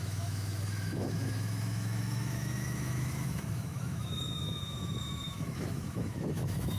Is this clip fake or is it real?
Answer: fake